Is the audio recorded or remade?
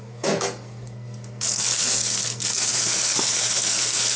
remade